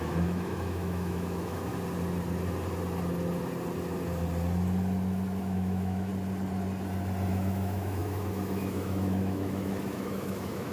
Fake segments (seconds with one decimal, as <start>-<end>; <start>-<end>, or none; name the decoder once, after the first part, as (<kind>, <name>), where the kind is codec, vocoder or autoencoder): 0.0-1.7 (autoencoder, DAC-VAE); 5.4-6.1; 7.3-10.7